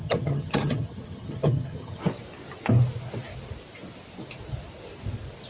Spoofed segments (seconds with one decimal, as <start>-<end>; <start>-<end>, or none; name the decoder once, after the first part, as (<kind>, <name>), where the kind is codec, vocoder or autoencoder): 0.0-2.0 (vocoder, HiFi-GAN)